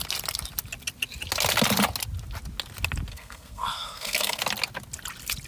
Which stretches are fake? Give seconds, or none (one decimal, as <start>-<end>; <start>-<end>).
3.1-4.4